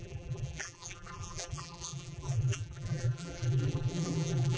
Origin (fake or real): fake